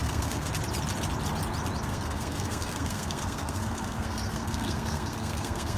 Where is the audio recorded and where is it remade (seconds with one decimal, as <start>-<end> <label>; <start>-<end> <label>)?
0.0-0.5 remade; 0.5-1.9 recorded; 1.9-5.8 remade